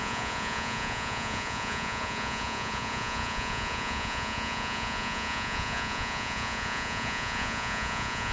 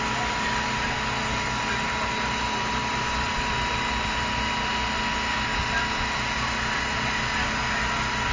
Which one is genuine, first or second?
second